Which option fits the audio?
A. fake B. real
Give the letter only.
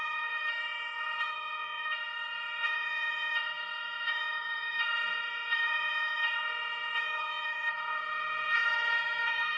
A